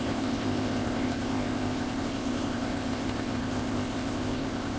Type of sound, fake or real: fake